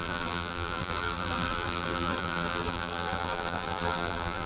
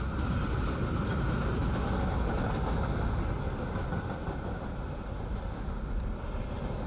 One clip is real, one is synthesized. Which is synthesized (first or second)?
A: first